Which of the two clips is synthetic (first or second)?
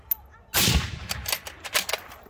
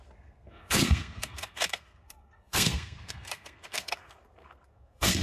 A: second